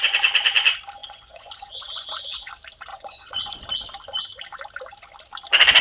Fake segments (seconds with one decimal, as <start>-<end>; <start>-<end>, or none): 1.0-2.5; 2.9-3.6